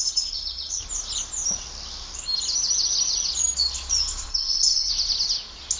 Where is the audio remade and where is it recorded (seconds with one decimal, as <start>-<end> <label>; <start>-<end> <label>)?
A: 0.0-0.8 remade; 0.8-4.3 recorded; 4.3-4.9 remade; 4.9-5.8 recorded